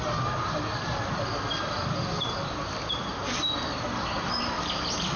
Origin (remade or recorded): recorded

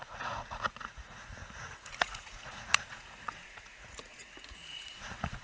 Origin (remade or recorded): remade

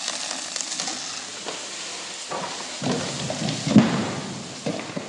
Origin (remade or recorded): recorded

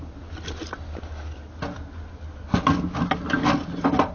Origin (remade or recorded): recorded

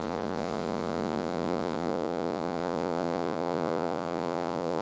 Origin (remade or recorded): remade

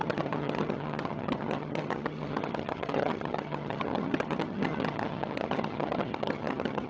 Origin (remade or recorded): remade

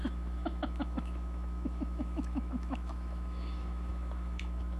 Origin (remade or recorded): remade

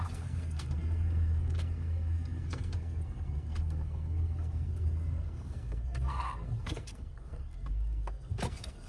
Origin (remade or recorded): remade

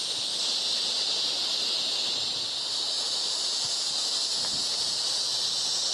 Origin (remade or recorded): recorded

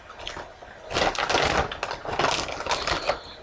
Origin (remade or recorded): recorded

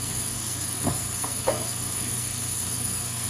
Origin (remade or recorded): remade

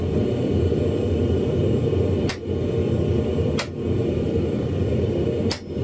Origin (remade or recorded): recorded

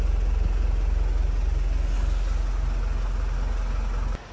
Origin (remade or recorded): recorded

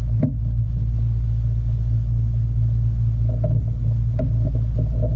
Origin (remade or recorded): recorded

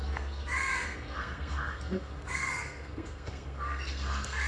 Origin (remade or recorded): remade